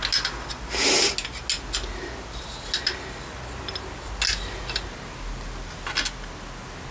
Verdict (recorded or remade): recorded